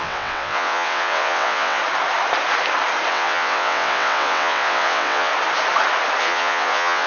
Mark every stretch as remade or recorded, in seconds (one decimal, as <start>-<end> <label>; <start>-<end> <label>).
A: 0.0-1.8 remade; 1.8-3.1 recorded; 3.1-5.3 remade; 5.3-6.2 recorded; 6.2-7.1 remade